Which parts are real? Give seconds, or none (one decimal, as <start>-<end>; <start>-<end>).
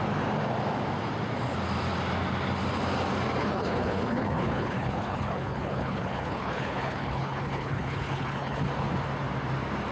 0.0-3.4; 8.6-9.9